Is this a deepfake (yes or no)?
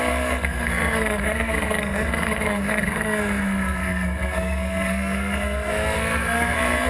yes